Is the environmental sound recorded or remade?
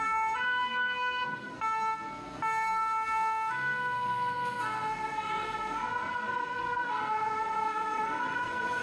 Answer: remade